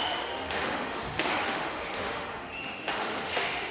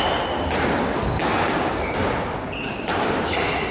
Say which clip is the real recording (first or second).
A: second